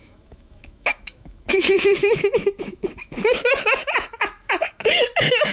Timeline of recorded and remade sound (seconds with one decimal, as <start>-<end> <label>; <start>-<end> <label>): 0.0-5.5 remade